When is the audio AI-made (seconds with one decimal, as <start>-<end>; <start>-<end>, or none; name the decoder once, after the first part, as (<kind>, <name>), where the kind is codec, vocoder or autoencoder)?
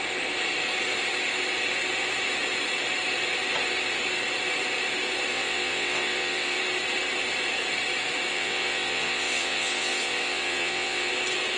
5.3-6.6 (vocoder, WaveNeXt); 8.3-11.1